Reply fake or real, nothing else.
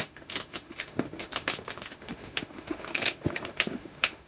fake